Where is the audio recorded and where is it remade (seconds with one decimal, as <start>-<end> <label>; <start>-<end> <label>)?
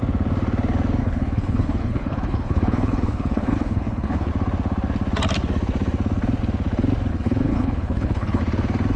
0.0-1.0 recorded; 1.0-4.3 remade; 4.3-7.1 recorded; 7.1-8.4 remade; 8.4-9.0 recorded